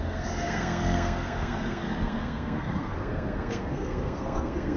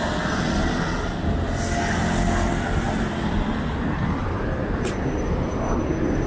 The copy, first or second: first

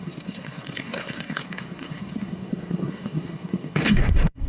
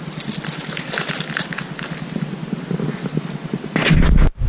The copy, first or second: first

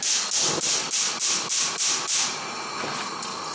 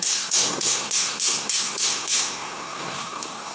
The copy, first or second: second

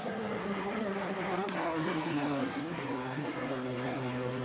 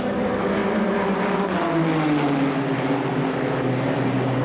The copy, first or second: first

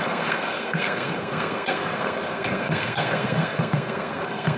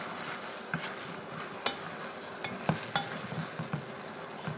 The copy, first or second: first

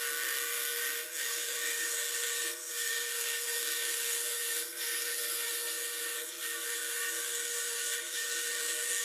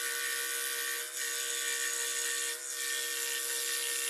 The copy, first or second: first